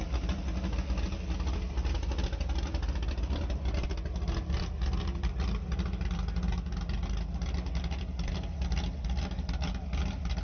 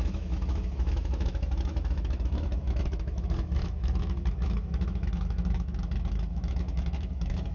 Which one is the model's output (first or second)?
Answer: second